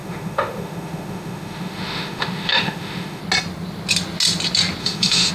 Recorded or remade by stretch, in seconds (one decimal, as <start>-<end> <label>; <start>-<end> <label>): 0.0-3.2 remade; 3.2-4.8 recorded; 4.8-5.3 remade